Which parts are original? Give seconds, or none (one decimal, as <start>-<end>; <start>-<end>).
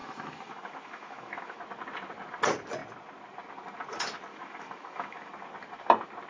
1.6-4.3; 5.3-6.3